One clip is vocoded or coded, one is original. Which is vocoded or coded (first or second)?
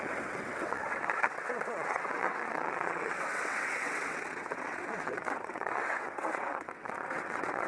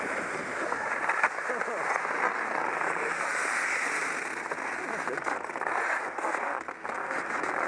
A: first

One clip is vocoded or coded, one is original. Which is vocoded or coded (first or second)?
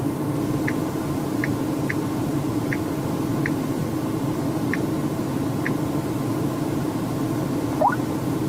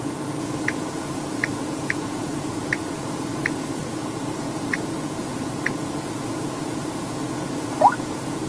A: second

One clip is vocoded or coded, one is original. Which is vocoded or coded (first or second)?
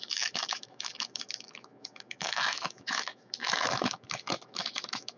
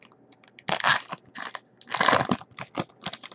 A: first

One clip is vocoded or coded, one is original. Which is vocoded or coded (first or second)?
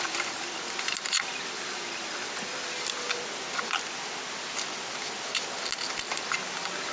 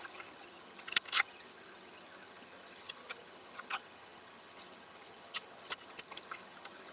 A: second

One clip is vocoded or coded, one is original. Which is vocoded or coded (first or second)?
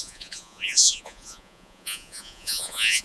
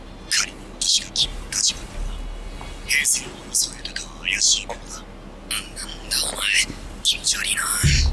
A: first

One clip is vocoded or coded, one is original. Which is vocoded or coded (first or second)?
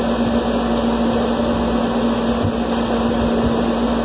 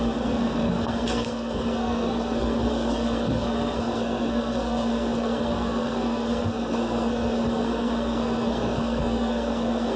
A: second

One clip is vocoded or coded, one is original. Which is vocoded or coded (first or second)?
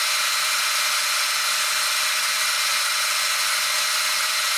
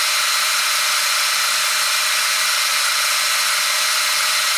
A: second